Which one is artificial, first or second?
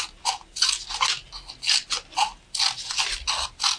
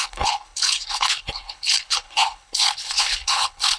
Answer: second